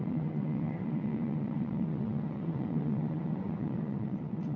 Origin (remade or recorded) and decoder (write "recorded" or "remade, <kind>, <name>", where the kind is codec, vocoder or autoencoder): remade, vocoder, WaveNeXt